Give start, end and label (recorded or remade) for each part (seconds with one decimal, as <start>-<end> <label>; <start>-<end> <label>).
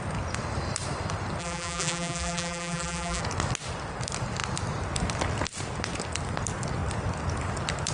0.0-1.4 recorded; 1.4-3.2 remade; 3.2-7.9 recorded